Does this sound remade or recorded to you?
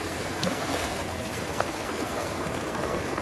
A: remade